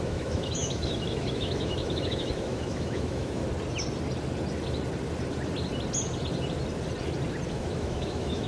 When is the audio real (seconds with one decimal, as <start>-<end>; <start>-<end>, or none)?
3.4-7.5